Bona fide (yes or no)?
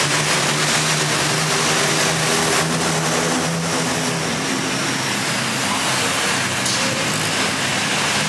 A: yes